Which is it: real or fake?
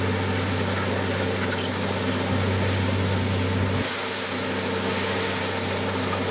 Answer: real